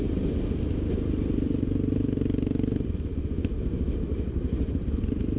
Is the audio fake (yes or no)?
no